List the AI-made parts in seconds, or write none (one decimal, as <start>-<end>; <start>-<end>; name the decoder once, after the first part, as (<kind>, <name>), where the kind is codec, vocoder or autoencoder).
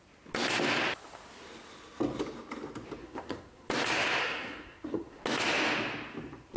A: 3.0-3.7 (codec, SNAC); 4.2-5.2